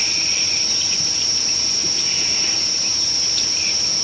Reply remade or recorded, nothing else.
recorded